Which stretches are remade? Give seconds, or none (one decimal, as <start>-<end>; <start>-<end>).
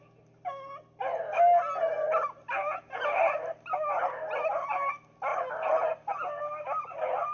none